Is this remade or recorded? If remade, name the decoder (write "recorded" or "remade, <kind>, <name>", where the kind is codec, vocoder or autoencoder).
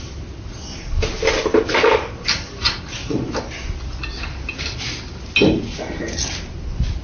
recorded